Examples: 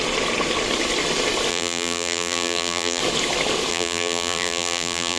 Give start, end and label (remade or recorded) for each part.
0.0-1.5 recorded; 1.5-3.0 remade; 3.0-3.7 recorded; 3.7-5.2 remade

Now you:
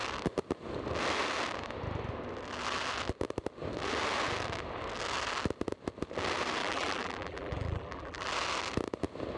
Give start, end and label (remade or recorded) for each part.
0.0-6.6 recorded; 6.6-8.3 remade; 8.3-9.4 recorded

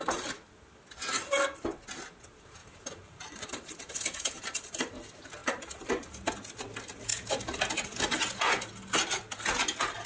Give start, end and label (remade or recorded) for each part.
0.0-2.6 recorded; 2.6-4.9 remade; 4.9-5.4 recorded; 5.4-6.1 remade; 6.1-10.1 recorded

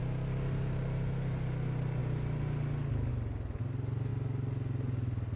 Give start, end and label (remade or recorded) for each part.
0.0-5.4 recorded

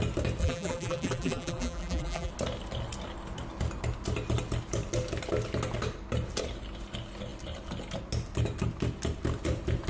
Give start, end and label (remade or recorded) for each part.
0.0-0.4 recorded; 0.4-2.3 remade; 2.3-9.9 recorded

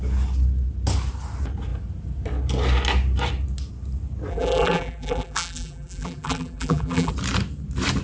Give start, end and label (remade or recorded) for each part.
0.0-4.3 recorded; 4.3-7.1 remade; 7.1-8.0 recorded

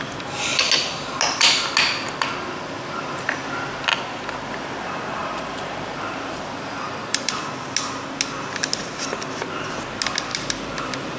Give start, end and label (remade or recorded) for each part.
0.0-5.2 recorded; 5.2-7.3 remade; 7.3-10.3 recorded; 10.3-11.2 remade

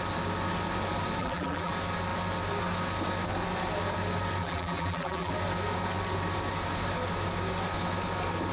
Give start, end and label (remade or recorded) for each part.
0.0-1.2 recorded; 1.2-1.7 remade; 1.7-4.4 recorded; 4.4-5.3 remade; 5.3-8.5 recorded